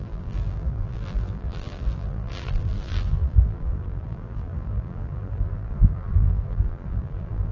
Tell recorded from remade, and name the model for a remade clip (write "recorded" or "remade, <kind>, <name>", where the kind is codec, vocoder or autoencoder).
remade, vocoder, BigVGAN v2